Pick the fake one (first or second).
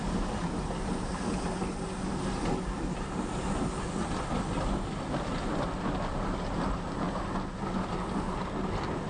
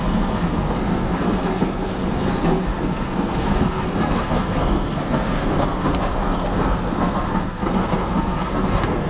second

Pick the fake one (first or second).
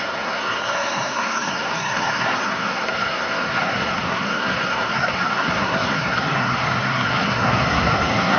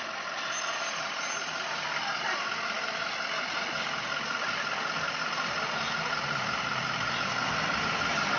first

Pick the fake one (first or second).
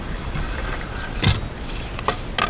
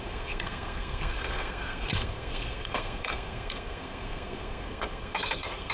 second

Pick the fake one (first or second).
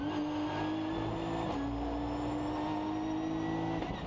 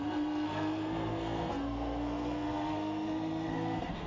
second